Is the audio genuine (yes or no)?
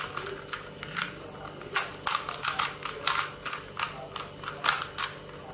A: yes